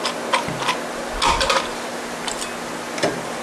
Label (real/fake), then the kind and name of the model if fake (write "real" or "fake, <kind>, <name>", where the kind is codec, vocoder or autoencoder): real